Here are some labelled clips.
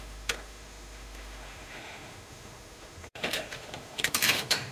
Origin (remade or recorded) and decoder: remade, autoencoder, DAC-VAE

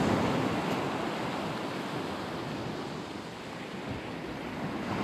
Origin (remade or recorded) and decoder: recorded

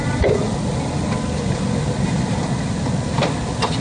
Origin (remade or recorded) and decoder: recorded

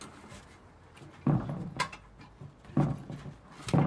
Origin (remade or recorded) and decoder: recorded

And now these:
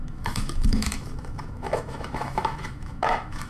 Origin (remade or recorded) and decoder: remade, autoencoder, DAC-VAE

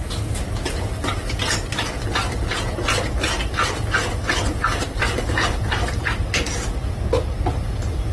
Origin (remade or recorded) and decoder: recorded